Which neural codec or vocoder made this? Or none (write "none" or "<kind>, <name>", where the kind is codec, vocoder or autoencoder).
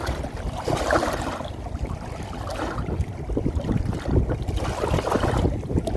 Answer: none